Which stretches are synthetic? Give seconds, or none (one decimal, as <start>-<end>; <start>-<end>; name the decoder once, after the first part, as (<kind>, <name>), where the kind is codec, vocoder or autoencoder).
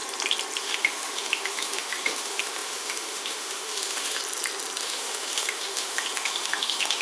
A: 0.6-4.2 (autoencoder, DAC-VAE); 4.8-7.0